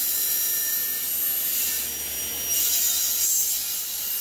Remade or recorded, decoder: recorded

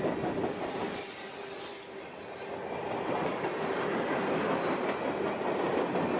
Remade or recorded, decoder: recorded